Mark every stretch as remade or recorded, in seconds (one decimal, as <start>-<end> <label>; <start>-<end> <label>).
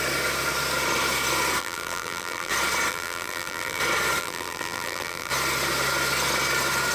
0.0-1.6 recorded; 1.6-2.5 remade; 2.5-2.9 recorded; 2.9-3.8 remade; 3.8-4.2 recorded; 4.2-5.3 remade; 5.3-6.9 recorded